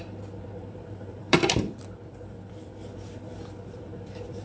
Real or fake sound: fake